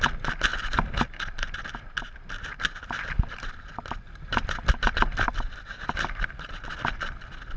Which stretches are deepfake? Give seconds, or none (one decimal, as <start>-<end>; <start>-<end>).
0.5-1.6; 4.3-6.6